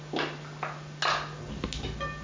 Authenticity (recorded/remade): recorded